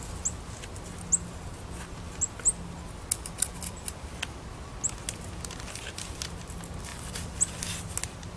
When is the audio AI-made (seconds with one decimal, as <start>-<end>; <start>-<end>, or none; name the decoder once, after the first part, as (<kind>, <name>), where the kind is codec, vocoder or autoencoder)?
none